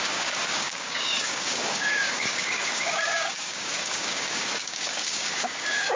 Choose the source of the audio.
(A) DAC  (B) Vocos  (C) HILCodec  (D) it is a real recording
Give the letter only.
A